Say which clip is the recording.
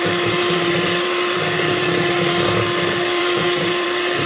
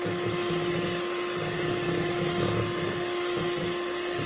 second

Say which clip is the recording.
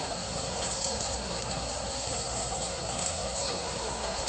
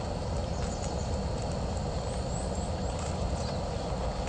second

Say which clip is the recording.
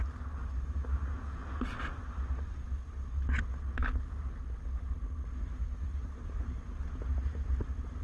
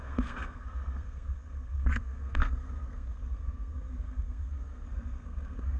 first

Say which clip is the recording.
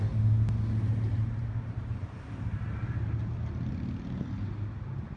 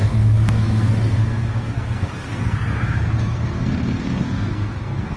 first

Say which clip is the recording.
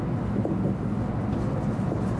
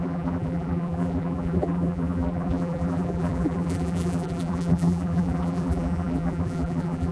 first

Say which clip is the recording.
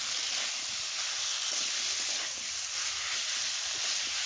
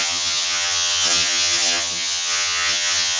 first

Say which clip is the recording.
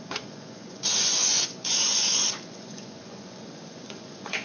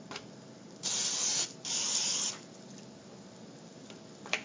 second